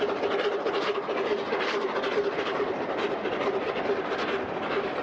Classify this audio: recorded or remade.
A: recorded